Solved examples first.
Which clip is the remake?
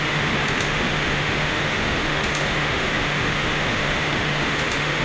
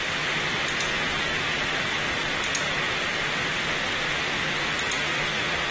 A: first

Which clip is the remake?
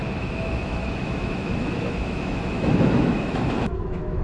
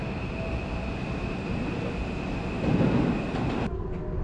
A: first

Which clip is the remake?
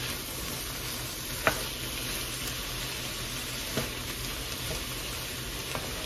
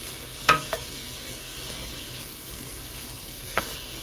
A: second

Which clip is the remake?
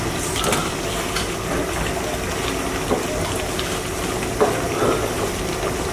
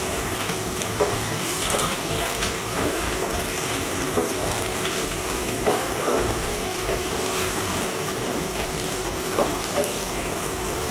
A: second